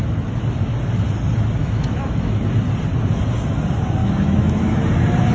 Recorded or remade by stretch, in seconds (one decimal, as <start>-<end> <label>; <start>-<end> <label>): 0.0-1.6 recorded; 1.6-2.4 remade; 2.4-4.0 recorded; 4.0-4.8 remade; 4.8-5.3 recorded